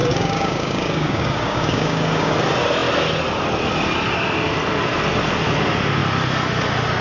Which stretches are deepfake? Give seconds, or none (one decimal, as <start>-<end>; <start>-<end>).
0.0-2.3